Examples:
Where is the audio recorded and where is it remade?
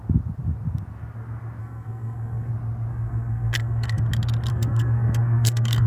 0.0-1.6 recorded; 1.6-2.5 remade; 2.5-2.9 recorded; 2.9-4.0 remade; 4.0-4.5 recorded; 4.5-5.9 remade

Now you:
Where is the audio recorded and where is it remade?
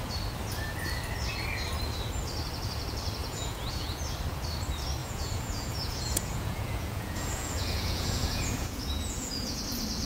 0.0-3.2 recorded; 3.2-4.0 remade; 4.0-5.0 recorded; 5.0-9.6 remade; 9.6-10.1 recorded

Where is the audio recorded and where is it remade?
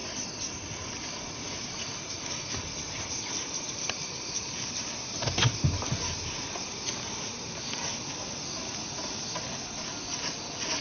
0.0-2.3 remade; 2.3-10.8 recorded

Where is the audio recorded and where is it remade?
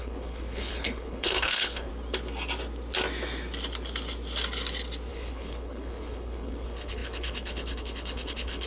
0.0-1.9 remade; 1.9-5.1 recorded; 5.1-8.7 remade